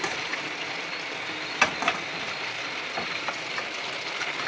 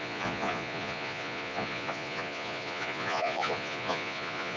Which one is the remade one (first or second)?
second